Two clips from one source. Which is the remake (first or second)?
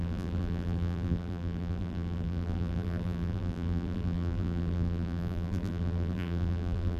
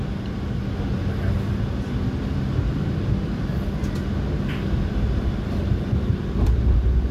first